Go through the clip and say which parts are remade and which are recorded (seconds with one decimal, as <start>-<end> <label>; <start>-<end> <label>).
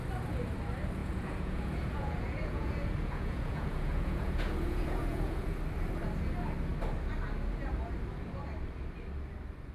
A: 0.0-1.0 recorded; 1.0-5.6 remade; 5.6-9.7 recorded